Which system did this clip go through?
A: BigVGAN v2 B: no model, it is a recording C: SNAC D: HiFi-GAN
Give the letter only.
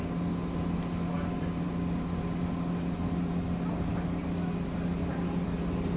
B